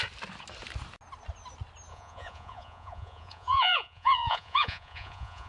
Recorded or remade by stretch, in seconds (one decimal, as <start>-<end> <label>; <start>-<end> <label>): 0.0-1.9 recorded; 1.9-5.5 remade